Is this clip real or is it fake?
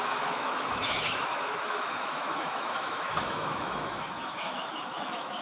fake